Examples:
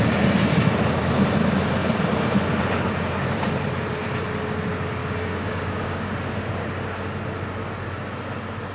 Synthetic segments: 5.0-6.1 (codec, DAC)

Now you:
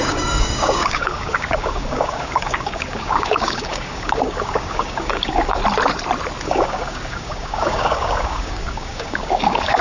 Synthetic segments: 0.0-5.6 (codec, DAC); 6.4-9.8

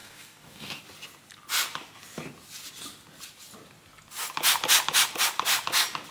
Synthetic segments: 0.0-0.8 (codec, DAC)